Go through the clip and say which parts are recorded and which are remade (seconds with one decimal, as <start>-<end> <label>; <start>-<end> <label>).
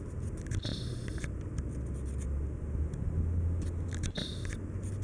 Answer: 0.0-5.0 recorded